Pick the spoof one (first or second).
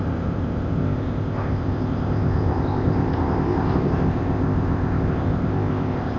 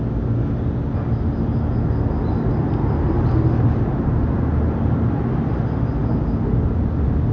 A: first